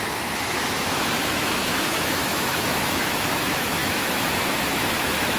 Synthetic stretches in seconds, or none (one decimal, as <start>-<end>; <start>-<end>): 0.0-5.4